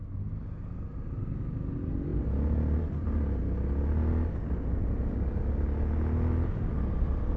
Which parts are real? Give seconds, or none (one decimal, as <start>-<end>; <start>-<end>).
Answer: 0.0-7.4